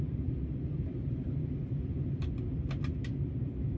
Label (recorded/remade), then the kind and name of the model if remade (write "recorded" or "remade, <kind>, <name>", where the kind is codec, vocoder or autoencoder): recorded